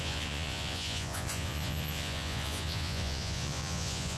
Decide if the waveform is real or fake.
fake